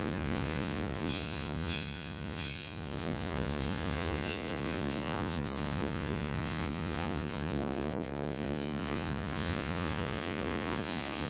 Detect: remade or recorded remade